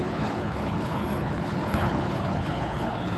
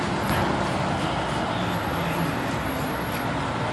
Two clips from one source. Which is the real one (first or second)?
second